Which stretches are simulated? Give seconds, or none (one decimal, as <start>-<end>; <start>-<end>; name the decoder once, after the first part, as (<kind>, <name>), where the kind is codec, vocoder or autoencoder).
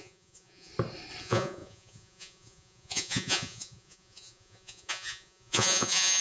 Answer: 0.0-0.7 (vocoder, Vocos); 1.2-6.2